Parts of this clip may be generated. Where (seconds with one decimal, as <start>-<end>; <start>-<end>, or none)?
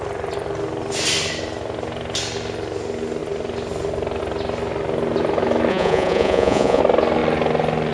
5.7-6.8